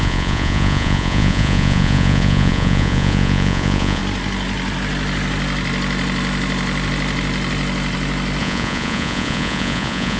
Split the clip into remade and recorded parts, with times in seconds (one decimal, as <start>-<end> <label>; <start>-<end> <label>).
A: 0.0-4.0 remade; 4.0-8.4 recorded; 8.4-10.2 remade